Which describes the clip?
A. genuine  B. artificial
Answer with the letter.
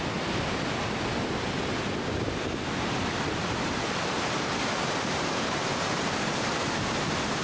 A